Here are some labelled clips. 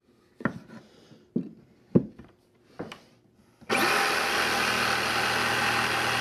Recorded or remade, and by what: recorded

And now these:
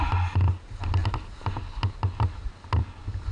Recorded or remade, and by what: recorded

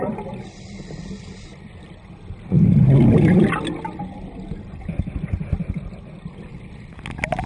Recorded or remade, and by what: recorded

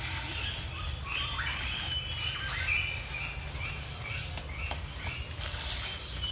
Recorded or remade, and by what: recorded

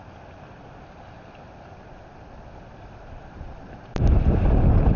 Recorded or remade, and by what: recorded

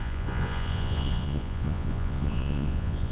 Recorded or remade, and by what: remade, vocoder, Vocos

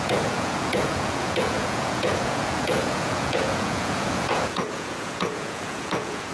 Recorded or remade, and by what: remade, vocoder, Vocos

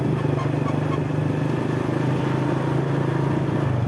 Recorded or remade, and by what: recorded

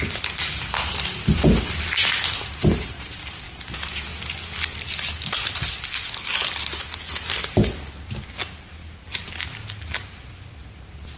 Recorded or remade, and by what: recorded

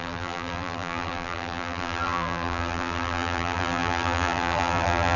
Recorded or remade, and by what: remade, vocoder, BigVGAN v2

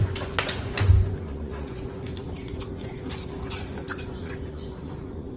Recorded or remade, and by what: remade, vocoder, Vocos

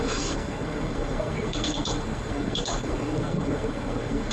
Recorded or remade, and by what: remade, codec, SNAC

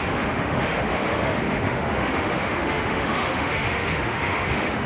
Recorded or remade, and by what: remade, autoencoder, DAC-VAE